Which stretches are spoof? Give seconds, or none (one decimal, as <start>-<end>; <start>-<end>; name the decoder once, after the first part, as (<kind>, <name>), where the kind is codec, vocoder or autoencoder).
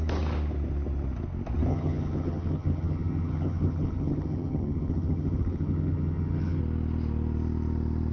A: 1.7-6.6 (vocoder, HiFi-GAN)